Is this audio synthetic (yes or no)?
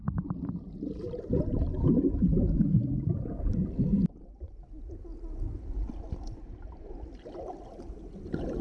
no